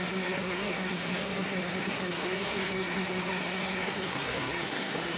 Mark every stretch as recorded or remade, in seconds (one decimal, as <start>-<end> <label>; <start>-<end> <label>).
0.0-5.2 remade